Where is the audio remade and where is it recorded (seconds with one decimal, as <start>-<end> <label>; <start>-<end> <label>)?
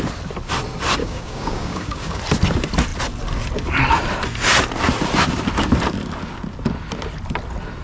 0.0-1.0 recorded; 1.0-2.2 remade; 2.2-7.8 recorded